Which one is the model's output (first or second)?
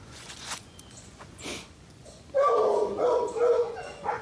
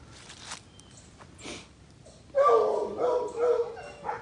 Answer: first